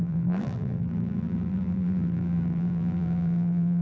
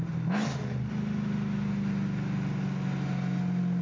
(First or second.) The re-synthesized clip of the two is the first